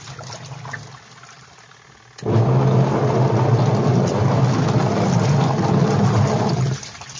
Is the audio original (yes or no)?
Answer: yes